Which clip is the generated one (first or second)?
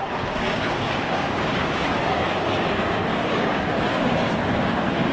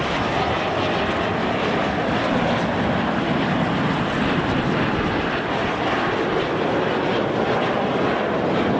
first